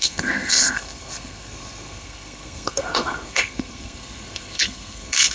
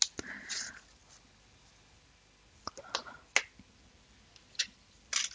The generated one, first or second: first